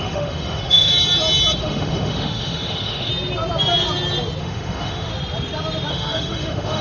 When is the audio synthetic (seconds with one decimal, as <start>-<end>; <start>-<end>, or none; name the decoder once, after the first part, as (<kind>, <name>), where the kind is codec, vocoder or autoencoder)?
0.0-0.9 (autoencoder, DAC-VAE); 1.6-3.1; 4.4-5.1; 5.9-6.8